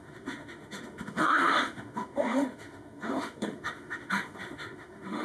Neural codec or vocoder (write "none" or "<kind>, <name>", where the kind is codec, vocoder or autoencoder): autoencoder, DAC-VAE